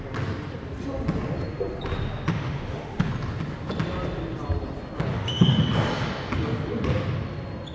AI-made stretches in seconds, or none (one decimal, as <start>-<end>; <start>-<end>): 2.3-3.1; 5.1-5.6